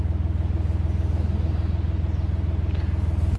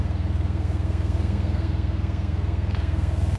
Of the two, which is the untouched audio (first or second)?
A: first